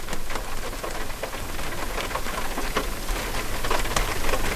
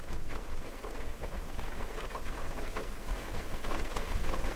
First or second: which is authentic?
first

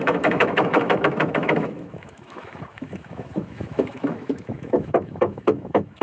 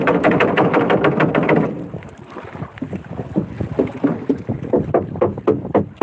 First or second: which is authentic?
second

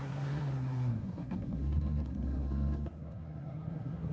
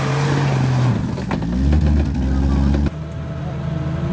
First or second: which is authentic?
second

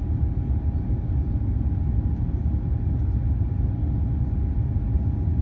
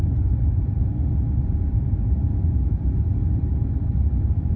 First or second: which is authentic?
first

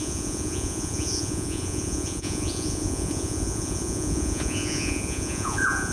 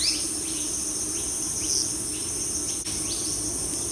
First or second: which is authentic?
second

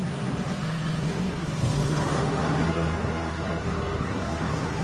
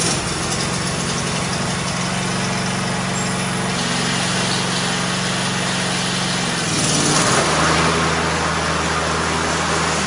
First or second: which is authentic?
second